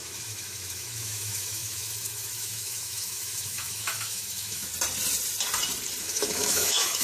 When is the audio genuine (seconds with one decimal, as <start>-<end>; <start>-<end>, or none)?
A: 4.7-6.0